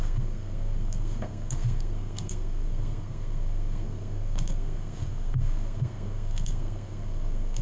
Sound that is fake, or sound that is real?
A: fake